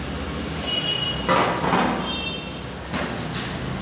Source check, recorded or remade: recorded